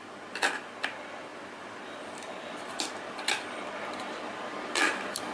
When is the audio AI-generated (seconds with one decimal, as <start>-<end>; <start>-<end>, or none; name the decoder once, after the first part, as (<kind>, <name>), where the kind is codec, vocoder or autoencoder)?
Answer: 1.3-3.8 (vocoder, BigVGAN v2)